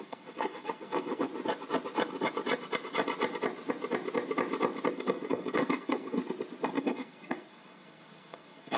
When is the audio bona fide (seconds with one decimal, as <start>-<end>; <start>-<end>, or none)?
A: 1.3-4.9; 6.2-6.8